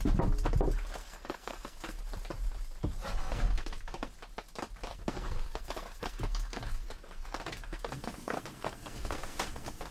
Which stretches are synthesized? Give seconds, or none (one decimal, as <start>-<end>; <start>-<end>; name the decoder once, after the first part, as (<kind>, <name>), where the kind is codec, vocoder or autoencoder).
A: 1.0-2.0 (codec, SNAC); 3.2-4.1; 4.9-9.9